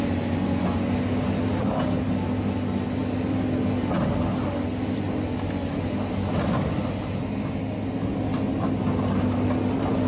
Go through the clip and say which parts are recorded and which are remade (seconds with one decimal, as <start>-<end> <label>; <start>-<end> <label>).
0.0-10.1 recorded